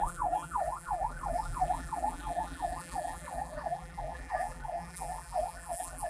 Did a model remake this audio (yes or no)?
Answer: yes